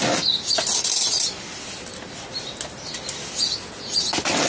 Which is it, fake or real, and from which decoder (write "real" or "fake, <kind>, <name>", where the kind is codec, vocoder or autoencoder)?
real